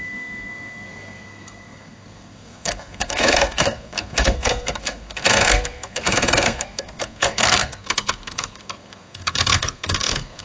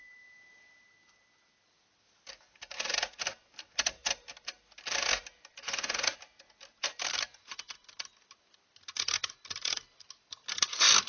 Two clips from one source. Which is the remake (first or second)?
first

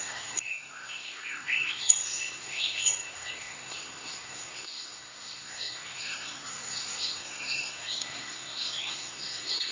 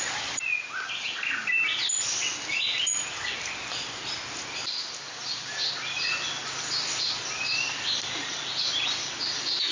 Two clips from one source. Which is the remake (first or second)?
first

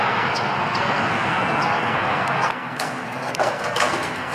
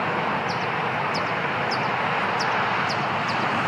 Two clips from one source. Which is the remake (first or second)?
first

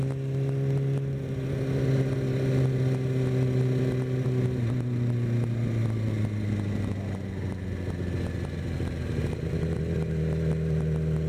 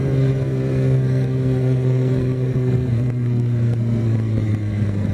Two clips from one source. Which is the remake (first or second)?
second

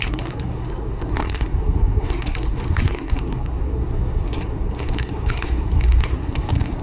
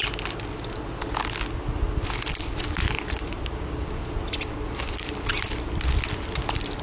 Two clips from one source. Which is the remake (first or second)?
first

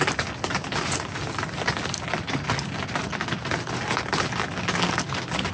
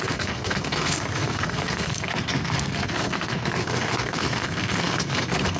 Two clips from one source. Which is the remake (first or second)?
second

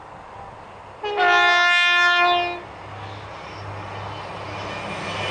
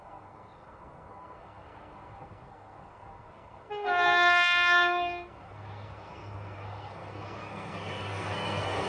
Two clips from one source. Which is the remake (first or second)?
second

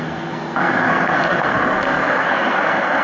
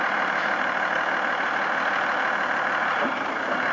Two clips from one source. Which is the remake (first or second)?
first